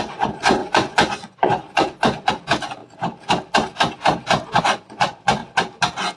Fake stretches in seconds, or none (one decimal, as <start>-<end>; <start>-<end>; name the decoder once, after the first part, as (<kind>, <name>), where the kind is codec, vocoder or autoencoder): 0.0-2.8 (vocoder, Vocos); 4.6-5.4